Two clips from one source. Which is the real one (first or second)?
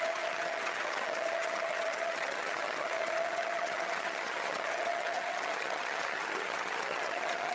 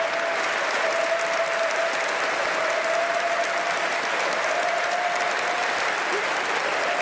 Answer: second